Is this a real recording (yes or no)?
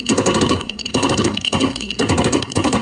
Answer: no